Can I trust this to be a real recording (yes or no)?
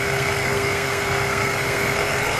no